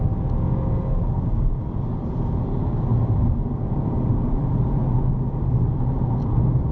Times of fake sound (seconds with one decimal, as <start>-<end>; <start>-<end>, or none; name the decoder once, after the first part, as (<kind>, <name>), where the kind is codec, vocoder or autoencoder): 2.9-4.9 (vocoder, BigVGAN v2)